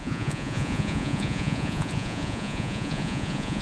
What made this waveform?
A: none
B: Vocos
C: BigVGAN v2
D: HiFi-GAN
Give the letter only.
B